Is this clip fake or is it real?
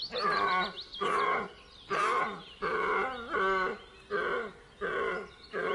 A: real